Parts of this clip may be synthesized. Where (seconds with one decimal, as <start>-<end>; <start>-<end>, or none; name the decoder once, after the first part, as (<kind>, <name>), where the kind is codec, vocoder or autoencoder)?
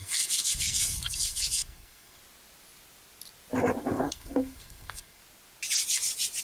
0.0-2.2 (codec, SNAC); 3.8-5.2